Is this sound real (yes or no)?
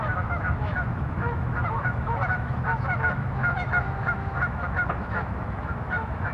no